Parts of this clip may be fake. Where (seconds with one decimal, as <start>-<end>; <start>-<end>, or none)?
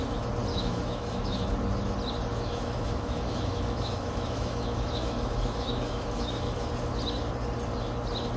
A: 0.5-1.5; 2.3-6.7